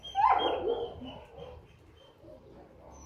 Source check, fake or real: real